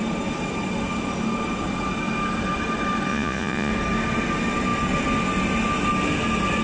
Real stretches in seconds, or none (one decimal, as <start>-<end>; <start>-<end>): 0.0-3.1; 3.7-6.6